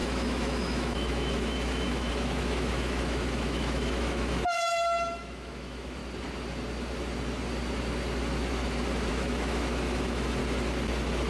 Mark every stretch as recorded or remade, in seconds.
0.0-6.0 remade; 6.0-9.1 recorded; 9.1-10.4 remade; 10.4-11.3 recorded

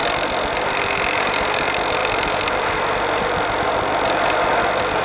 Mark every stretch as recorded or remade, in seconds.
0.0-1.2 remade; 1.2-2.0 recorded; 2.0-5.0 remade

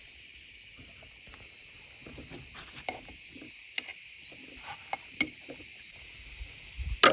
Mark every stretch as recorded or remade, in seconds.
0.0-7.1 recorded